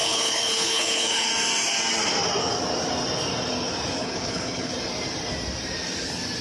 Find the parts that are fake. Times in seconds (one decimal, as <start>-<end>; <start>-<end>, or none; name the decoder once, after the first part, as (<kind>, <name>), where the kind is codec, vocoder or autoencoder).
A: 0.0-1.3 (codec, HILCodec); 4.0-4.7